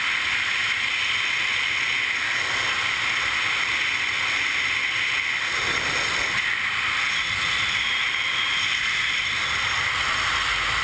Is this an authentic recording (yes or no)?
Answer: yes